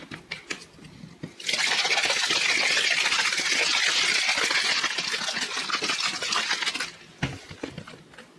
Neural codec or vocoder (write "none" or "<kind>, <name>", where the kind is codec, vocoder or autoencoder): none